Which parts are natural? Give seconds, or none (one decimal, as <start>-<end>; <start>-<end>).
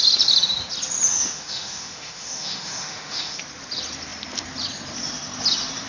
0.0-1.1; 3.4-5.9